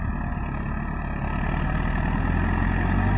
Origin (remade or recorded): recorded